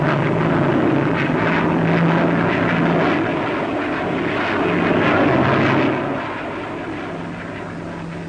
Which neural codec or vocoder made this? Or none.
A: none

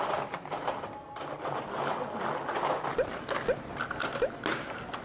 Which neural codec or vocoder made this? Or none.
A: none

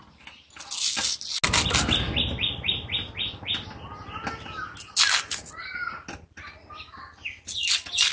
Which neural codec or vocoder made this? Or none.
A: none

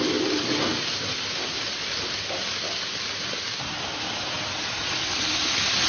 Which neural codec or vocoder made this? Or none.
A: none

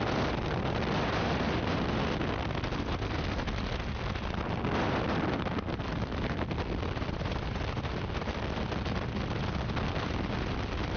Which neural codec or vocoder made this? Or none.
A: none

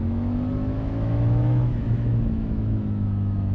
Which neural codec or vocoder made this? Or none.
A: autoencoder, DAC-VAE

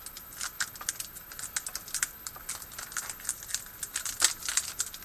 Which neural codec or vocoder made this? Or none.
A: none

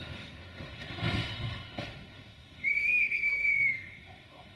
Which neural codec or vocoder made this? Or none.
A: autoencoder, DAC-VAE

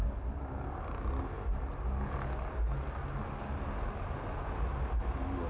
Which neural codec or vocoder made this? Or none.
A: none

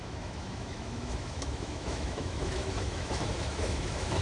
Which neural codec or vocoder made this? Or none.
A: autoencoder, DAC-VAE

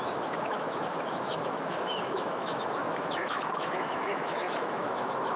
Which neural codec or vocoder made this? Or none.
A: autoencoder, DAC-VAE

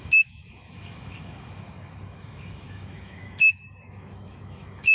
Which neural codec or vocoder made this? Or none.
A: autoencoder, DAC-VAE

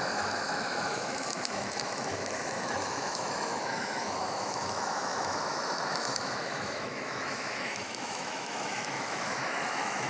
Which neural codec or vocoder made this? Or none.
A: autoencoder, DAC-VAE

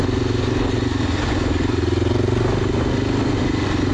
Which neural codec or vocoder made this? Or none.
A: none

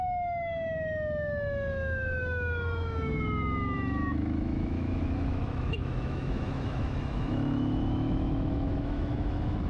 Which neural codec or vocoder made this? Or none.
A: autoencoder, DAC-VAE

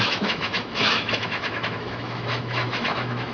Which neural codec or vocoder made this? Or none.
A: autoencoder, DAC-VAE